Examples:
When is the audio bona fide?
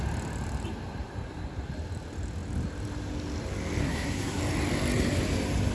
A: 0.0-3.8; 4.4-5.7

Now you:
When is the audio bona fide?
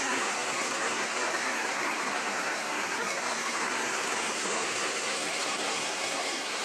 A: none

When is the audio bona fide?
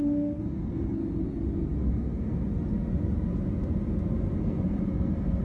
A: 1.0-1.8; 2.5-4.4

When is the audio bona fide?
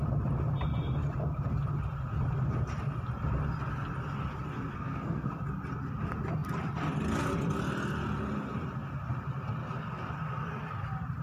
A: 0.0-4.7; 5.3-11.2